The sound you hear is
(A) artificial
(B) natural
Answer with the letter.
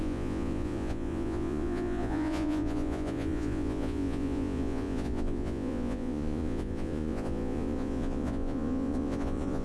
A